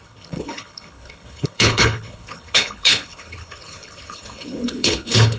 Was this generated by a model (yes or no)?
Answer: yes